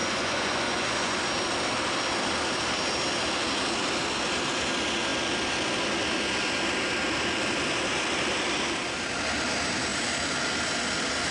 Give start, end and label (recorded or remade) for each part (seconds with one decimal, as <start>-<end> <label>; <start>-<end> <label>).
0.0-1.2 remade; 1.2-11.3 recorded

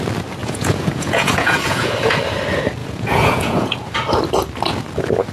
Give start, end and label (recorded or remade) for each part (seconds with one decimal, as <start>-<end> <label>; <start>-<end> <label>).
0.0-0.4 recorded; 0.4-2.2 remade; 2.2-2.8 recorded; 2.8-3.9 remade; 3.9-5.3 recorded

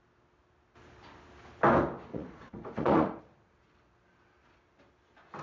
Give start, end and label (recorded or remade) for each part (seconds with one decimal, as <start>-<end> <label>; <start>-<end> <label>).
0.0-2.1 recorded; 2.1-3.2 remade; 3.2-5.4 recorded

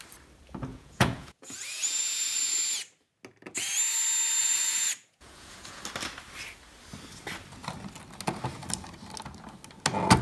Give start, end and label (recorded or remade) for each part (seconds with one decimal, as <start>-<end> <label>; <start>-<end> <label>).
0.0-0.7 recorded; 0.7-2.6 remade; 2.6-4.4 recorded; 4.4-5.8 remade; 5.8-10.2 recorded

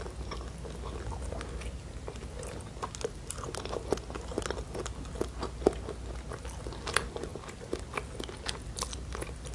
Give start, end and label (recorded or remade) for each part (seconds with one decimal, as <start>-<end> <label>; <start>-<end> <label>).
0.0-9.5 recorded